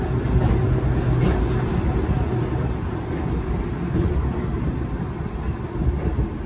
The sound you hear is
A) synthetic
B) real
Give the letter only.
B